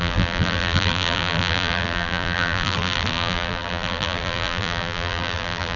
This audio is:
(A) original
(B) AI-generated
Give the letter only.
B